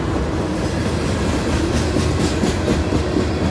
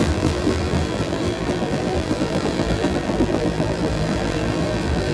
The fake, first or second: second